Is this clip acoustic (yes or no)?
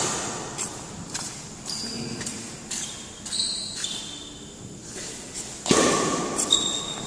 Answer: yes